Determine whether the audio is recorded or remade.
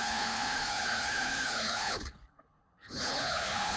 remade